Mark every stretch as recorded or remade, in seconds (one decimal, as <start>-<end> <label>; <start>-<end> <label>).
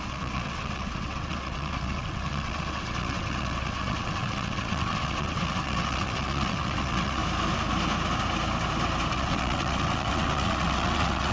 0.0-7.2 remade; 7.2-9.1 recorded; 9.1-11.3 remade